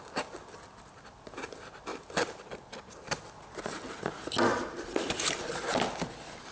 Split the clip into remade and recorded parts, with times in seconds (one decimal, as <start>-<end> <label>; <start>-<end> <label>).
0.0-1.9 recorded; 1.9-3.2 remade; 3.2-4.5 recorded; 4.5-5.5 remade; 5.5-6.5 recorded